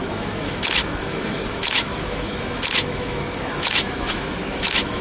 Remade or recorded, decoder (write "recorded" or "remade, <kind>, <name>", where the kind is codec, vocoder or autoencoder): remade, autoencoder, DAC-VAE